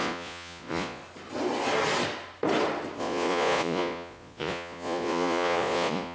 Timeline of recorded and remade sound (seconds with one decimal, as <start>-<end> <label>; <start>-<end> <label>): 0.0-1.0 remade; 1.0-3.0 recorded; 3.0-6.1 remade